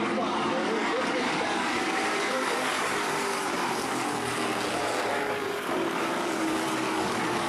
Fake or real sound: fake